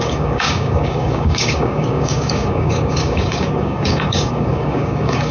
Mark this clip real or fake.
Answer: fake